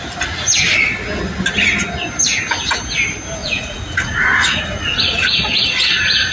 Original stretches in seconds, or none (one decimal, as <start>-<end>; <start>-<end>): 0.0-3.4; 5.7-6.3